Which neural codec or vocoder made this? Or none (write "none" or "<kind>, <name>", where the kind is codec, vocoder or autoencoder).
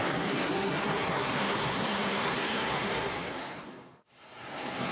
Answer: codec, SNAC